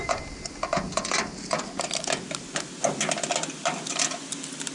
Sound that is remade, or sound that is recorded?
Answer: recorded